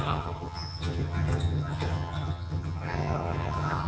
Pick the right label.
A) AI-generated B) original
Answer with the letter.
A